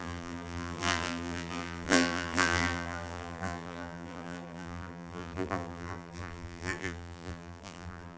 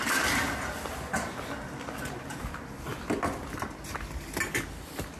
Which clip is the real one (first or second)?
second